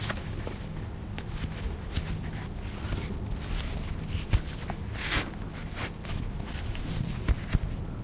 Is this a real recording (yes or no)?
yes